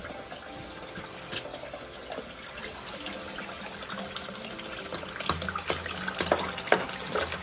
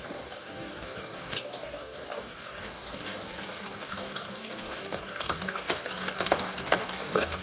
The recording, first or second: first